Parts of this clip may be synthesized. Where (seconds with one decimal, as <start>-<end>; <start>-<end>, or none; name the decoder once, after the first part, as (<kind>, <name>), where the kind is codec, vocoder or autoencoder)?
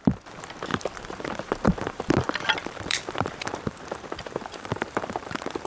0.7-2.1 (vocoder, BigVGAN v2); 2.6-5.7